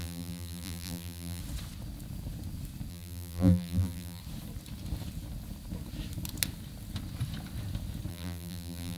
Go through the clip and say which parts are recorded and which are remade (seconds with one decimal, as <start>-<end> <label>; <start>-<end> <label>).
0.0-1.4 remade; 1.4-2.9 recorded; 2.9-4.2 remade; 4.2-8.1 recorded; 8.1-9.0 remade